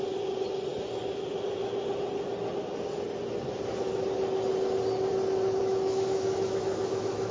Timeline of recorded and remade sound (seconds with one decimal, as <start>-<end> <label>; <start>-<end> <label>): 0.0-5.6 recorded; 5.6-7.3 remade